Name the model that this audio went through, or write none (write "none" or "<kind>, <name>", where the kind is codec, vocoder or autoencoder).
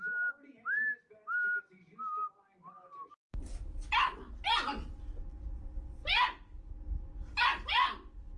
none